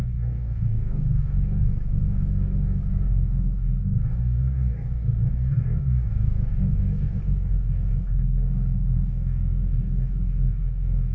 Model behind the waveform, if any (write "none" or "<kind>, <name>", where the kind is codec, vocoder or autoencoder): codec, DAC